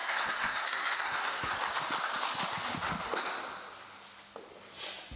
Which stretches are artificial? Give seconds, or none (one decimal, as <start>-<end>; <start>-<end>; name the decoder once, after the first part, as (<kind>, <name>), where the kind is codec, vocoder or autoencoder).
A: 0.0-1.5 (codec, SNAC)